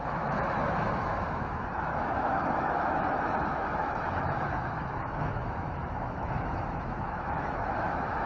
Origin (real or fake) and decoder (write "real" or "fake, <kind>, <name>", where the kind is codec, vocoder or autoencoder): fake, autoencoder, DAC-VAE